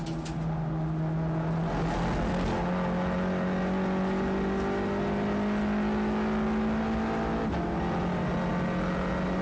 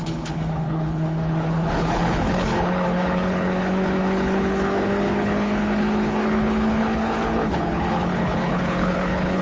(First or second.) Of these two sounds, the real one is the first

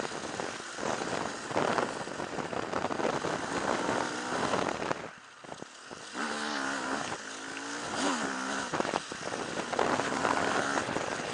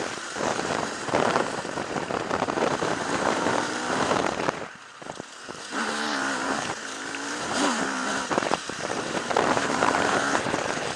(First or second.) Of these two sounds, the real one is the first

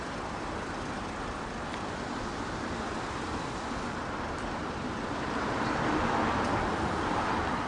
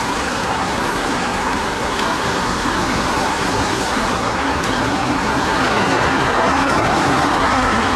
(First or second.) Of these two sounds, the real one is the first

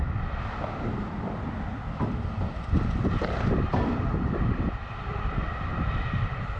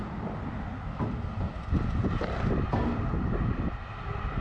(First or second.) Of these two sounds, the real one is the second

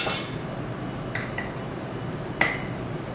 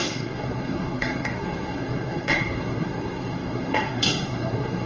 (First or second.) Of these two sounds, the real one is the first